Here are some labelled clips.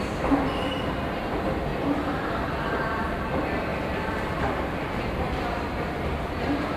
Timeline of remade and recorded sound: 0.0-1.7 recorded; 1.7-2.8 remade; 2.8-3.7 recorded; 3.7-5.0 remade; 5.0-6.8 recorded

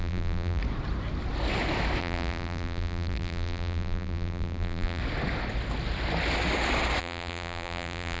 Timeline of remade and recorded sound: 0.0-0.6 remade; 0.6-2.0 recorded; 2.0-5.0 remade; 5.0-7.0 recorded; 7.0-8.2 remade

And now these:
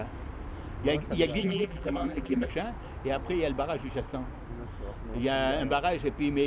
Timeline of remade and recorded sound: 0.0-1.4 recorded; 1.4-2.5 remade; 2.5-6.5 recorded

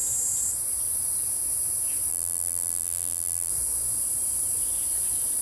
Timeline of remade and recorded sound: 0.0-2.1 recorded; 2.1-3.5 remade; 3.5-5.4 recorded

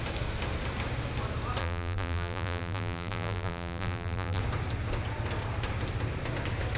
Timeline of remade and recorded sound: 0.0-1.6 recorded; 1.6-4.4 remade; 4.4-6.8 recorded